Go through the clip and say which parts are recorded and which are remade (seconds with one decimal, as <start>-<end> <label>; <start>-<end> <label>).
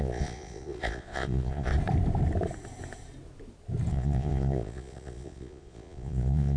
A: 0.0-1.7 remade; 1.7-3.9 recorded; 3.9-6.6 remade